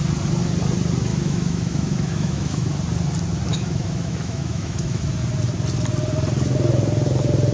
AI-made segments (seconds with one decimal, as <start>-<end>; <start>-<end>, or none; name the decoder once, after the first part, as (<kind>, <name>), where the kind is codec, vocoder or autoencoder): 1.1-2.7 (autoencoder, DAC-VAE); 3.5-5.0